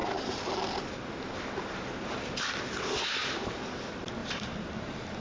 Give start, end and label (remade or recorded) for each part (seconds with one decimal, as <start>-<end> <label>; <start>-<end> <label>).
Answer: 0.0-4.2 recorded; 4.2-5.2 remade